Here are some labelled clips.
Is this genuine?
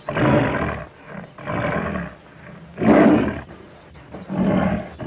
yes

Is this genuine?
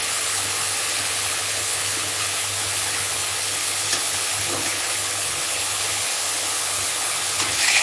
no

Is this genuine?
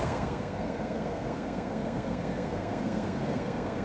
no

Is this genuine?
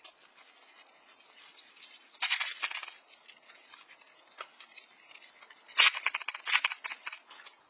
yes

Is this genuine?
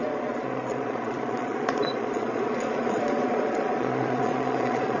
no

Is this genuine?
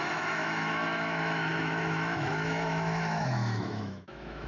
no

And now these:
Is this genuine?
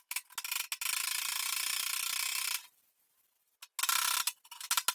yes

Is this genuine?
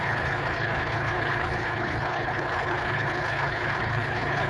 no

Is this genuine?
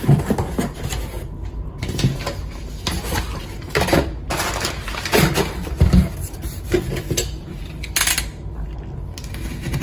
yes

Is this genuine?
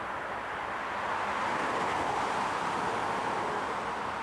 yes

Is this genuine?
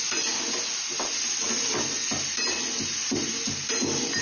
yes